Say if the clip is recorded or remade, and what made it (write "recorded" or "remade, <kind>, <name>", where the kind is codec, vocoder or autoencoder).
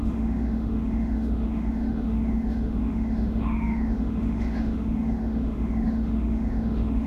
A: remade, autoencoder, DAC-VAE